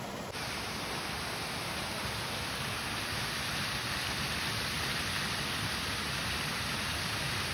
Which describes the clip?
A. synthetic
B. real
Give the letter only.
B